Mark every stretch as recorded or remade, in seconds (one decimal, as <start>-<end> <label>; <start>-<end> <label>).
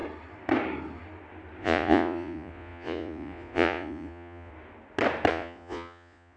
0.0-1.6 recorded; 1.6-4.5 remade; 4.5-5.3 recorded; 5.3-6.4 remade